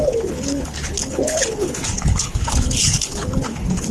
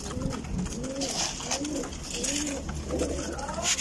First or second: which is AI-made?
first